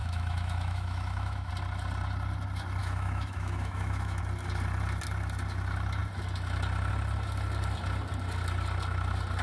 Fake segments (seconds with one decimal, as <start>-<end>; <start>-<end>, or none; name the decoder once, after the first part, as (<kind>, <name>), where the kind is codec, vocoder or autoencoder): 0.0-1.5 (autoencoder, DAC-VAE); 2.8-4.2